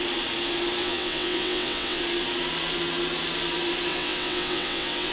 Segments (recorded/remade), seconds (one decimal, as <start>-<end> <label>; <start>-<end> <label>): 0.0-0.8 recorded; 0.8-2.0 remade; 2.0-3.9 recorded; 3.9-5.1 remade